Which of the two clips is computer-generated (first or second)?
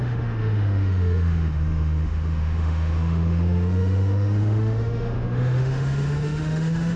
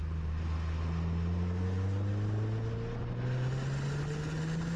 first